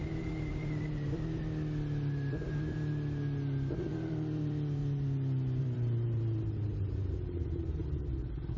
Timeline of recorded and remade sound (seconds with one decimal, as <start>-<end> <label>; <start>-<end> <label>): 0.0-1.1 remade; 1.1-3.9 recorded; 3.9-4.8 remade; 4.8-5.6 recorded; 5.6-7.8 remade; 7.8-8.6 recorded